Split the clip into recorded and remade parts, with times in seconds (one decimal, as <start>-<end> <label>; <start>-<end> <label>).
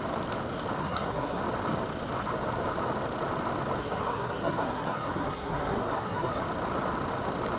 0.0-0.8 recorded; 0.8-1.4 remade; 1.4-3.8 recorded; 3.8-6.4 remade; 6.4-7.6 recorded